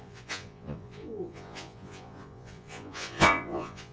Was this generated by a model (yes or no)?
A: yes